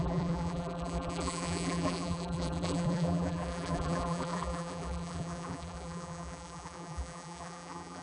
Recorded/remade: remade